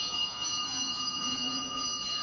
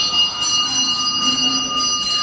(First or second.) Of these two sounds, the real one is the second